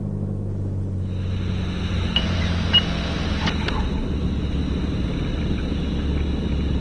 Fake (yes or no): no